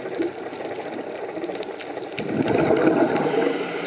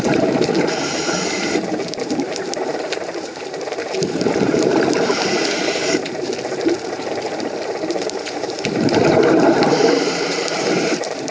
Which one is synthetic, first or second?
second